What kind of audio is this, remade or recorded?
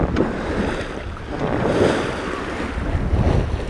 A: recorded